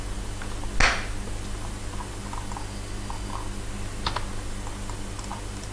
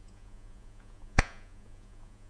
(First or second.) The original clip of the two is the first